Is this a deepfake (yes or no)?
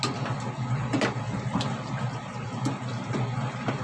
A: no